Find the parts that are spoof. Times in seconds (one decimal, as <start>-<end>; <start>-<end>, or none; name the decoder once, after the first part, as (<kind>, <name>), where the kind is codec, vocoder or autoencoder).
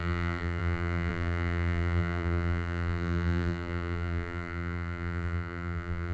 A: 0.0-6.1 (vocoder, BigVGAN v2)